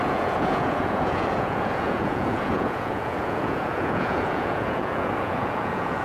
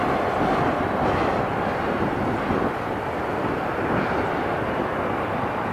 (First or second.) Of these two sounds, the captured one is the second